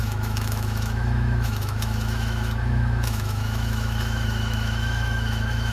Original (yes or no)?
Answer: no